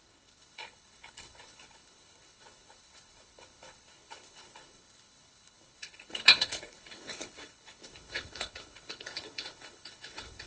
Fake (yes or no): yes